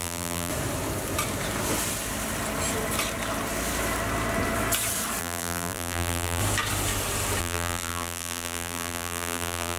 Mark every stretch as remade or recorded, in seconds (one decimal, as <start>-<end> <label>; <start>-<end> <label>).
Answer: 0.0-0.5 remade; 0.5-5.2 recorded; 5.2-6.4 remade; 6.4-7.4 recorded; 7.4-9.8 remade